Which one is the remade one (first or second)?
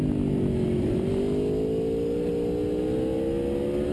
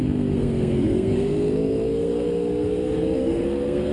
second